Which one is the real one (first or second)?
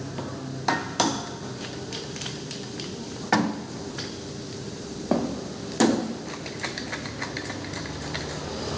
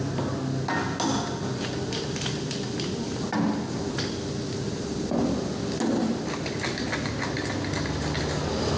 second